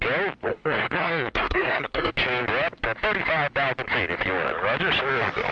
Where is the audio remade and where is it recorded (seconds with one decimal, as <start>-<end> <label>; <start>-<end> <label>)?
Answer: 0.0-0.5 recorded; 0.5-2.1 remade; 2.1-5.5 recorded